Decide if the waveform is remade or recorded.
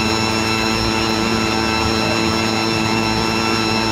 recorded